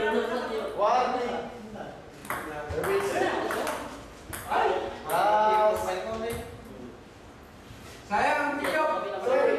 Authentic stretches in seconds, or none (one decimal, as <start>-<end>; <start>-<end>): 0.0-9.6